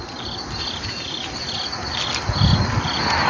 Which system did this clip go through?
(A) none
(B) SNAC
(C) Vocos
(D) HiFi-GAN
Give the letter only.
A